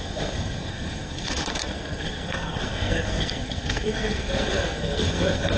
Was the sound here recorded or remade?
remade